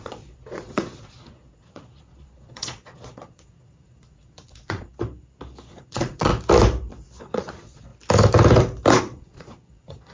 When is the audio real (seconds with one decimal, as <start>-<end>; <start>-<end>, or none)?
4.9-5.7; 6.3-7.2; 7.9-9.0